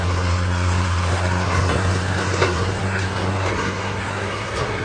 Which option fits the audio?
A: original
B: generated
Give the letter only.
B